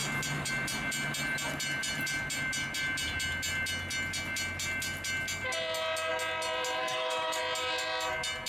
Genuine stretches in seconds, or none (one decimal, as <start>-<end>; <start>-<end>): 0.0-6.8; 7.4-8.5